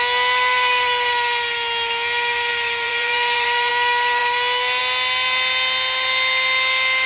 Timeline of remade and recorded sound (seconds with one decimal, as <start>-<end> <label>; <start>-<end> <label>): 0.0-2.5 recorded; 2.5-3.7 remade; 3.7-7.1 recorded